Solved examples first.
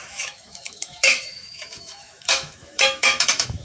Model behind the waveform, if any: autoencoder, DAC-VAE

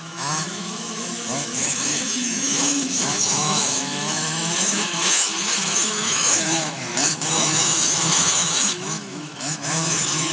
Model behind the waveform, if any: autoencoder, DAC-VAE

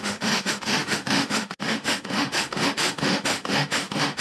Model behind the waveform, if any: autoencoder, DAC-VAE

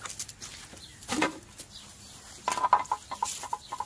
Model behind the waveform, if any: none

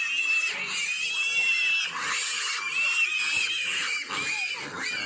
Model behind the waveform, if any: none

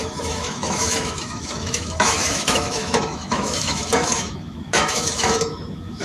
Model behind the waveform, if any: autoencoder, DAC-VAE